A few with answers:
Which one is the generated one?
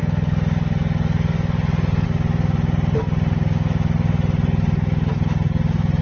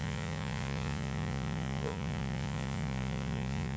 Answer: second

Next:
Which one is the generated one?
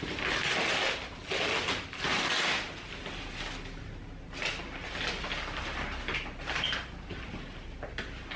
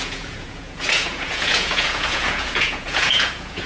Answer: second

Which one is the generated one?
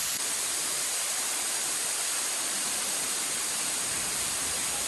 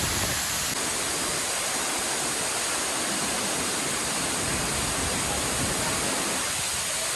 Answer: first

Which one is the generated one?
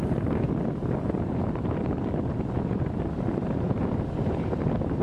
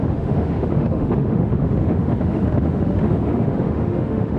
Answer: second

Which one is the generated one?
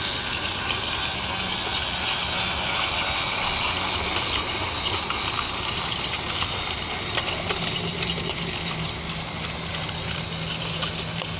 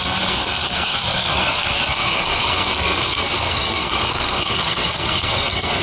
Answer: second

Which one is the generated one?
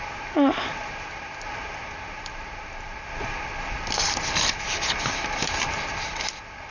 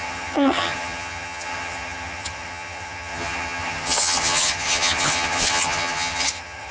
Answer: second